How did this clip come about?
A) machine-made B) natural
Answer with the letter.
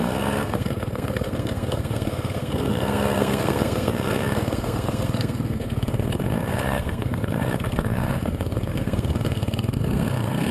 A